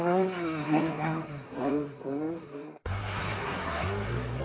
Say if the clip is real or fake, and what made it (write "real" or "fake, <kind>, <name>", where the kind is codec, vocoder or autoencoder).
fake, codec, SNAC